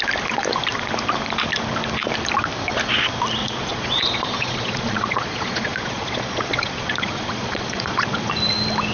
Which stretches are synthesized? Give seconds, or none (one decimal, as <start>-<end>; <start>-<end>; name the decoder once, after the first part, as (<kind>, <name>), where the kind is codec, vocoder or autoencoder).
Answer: 3.4-8.3 (vocoder, Vocos)